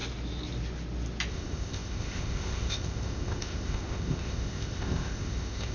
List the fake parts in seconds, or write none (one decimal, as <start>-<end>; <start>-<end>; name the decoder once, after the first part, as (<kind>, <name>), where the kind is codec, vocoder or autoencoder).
1.3-5.7 (codec, ZipCodec)